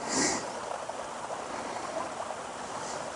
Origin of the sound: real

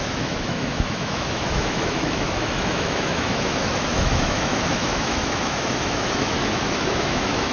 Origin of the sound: fake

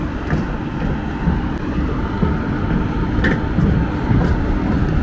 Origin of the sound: real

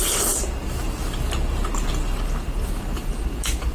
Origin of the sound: real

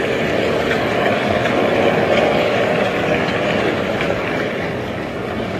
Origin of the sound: fake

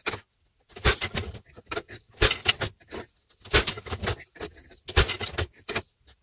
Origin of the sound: real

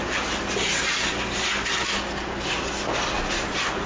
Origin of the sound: real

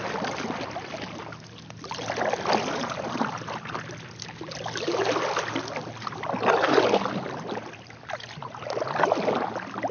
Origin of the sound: real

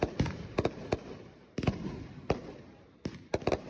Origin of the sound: fake